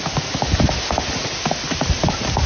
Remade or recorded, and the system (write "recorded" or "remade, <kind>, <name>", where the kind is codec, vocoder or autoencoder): recorded